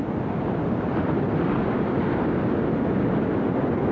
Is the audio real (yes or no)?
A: yes